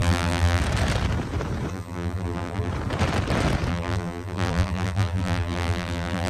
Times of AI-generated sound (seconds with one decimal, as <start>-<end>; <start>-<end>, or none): 0.0-0.6; 1.7-2.7; 3.7-6.3